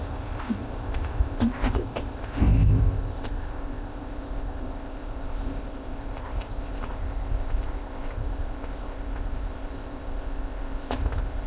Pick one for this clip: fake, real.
fake